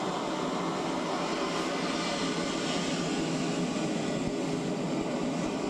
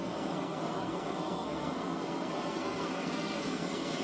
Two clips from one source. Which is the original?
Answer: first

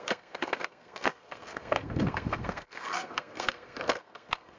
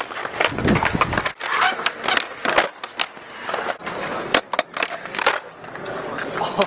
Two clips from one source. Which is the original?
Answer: second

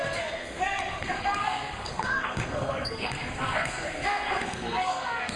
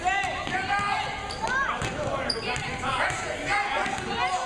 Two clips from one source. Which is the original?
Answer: second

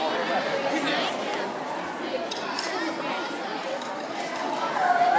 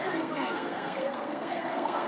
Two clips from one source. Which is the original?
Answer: first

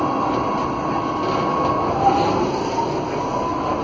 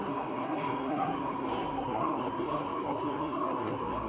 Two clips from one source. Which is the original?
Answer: first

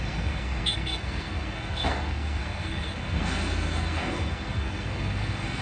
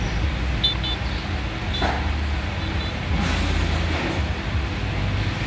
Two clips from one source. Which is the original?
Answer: second